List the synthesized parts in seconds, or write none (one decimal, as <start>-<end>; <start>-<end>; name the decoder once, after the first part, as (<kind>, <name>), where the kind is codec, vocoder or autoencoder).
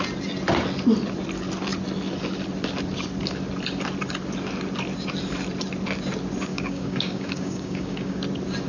6.5-8.2 (codec, DAC)